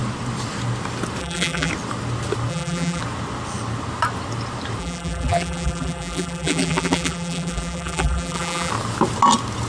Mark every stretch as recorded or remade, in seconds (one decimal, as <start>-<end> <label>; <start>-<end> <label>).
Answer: 0.0-1.2 recorded; 1.2-1.7 remade; 1.7-2.5 recorded; 2.5-3.0 remade; 3.0-4.8 recorded; 4.8-8.7 remade; 8.7-9.7 recorded